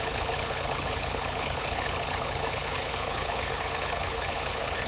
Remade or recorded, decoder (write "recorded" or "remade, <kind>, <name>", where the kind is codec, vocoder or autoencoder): remade, codec, HILCodec